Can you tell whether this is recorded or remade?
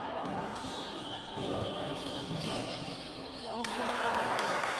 remade